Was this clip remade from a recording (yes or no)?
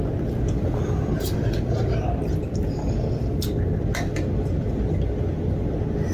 no